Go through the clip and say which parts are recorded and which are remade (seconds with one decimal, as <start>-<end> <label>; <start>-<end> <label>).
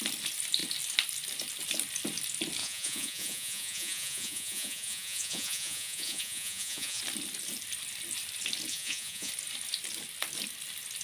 0.0-2.6 recorded; 2.6-7.0 remade; 7.0-8.7 recorded; 8.7-9.3 remade; 9.3-11.0 recorded